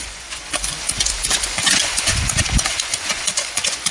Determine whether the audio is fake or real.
fake